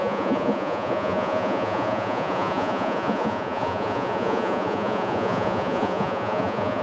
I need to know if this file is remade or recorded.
remade